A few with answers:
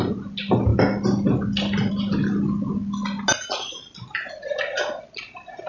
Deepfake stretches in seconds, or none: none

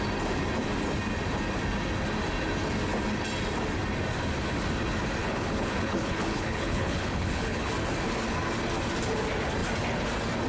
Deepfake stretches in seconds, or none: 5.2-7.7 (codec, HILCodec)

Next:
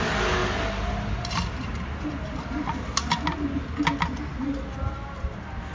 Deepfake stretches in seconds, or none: none

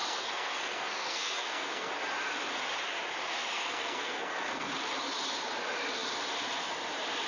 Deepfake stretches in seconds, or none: 0.0-1.9 (codec, SNAC); 3.4-4.7